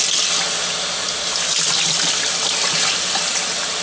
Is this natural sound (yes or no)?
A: yes